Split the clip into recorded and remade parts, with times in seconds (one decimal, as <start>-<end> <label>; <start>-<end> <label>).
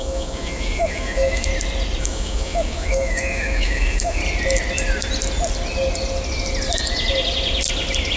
0.0-1.5 remade; 1.5-2.0 recorded; 2.0-4.2 remade; 4.2-8.2 recorded